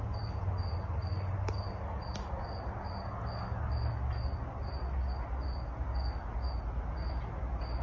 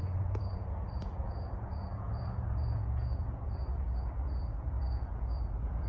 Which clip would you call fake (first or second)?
second